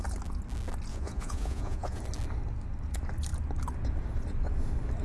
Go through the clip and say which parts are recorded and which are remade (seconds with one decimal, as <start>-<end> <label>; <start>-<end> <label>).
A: 0.0-0.9 recorded; 0.9-2.0 remade; 2.0-5.0 recorded